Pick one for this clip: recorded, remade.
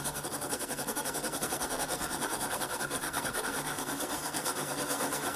remade